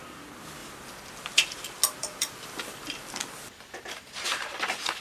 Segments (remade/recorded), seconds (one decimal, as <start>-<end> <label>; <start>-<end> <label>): 0.0-0.6 recorded; 0.6-1.1 remade; 1.1-2.0 recorded; 2.0-5.0 remade